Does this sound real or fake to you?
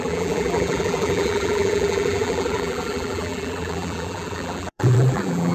fake